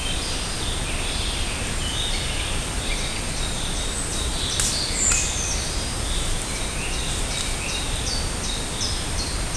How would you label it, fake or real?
real